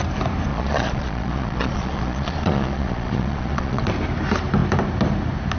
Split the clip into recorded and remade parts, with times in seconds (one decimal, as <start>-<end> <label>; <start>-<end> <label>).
0.0-0.5 recorded; 0.5-3.9 remade; 3.9-5.6 recorded

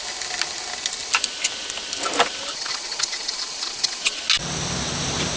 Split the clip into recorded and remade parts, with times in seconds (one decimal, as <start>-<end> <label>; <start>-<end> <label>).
0.0-2.5 recorded; 2.5-4.2 remade; 4.2-5.4 recorded

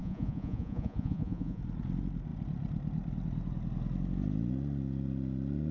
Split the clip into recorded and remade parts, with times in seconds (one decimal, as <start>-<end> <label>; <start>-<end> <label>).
0.0-1.6 remade; 1.6-5.7 recorded